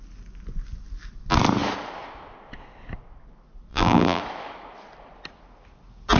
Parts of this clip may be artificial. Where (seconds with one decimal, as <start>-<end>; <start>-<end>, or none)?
3.7-4.2